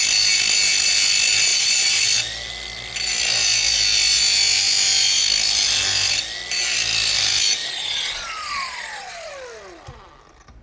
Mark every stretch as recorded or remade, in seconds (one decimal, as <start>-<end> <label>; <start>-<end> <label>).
0.0-1.5 recorded; 1.5-2.0 remade; 2.0-7.6 recorded; 7.6-9.3 remade; 9.3-10.6 recorded